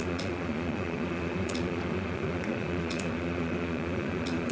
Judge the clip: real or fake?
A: fake